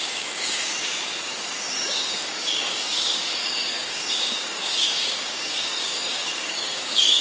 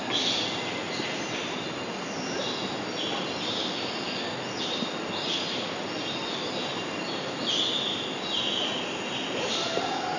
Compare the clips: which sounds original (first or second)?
second